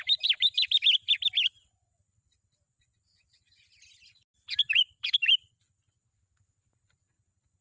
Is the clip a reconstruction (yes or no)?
yes